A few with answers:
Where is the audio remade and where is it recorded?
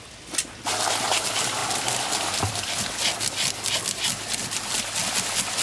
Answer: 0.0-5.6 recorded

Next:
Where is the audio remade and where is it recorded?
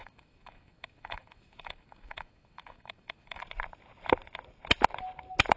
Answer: 0.0-3.4 remade; 3.4-5.6 recorded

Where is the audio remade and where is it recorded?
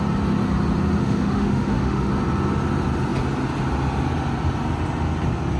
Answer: 0.0-1.0 recorded; 1.0-2.1 remade; 2.1-5.6 recorded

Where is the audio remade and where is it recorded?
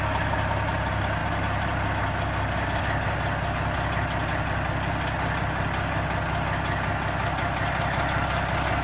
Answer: 0.0-8.8 recorded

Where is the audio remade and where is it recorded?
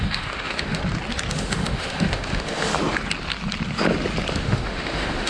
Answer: 0.0-0.8 remade; 0.8-1.3 recorded; 1.3-2.7 remade; 2.7-4.3 recorded; 4.3-5.3 remade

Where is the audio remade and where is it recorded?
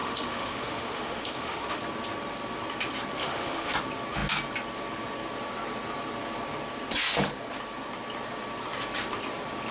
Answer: 0.0-1.8 remade; 1.8-3.2 recorded; 3.2-3.7 remade; 3.7-9.7 recorded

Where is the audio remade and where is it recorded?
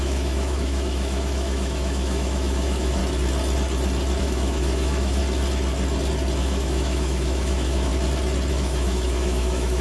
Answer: 0.0-3.0 remade; 3.0-4.2 recorded; 4.2-5.2 remade; 5.2-6.4 recorded; 6.4-7.9 remade; 7.9-8.5 recorded; 8.5-9.8 remade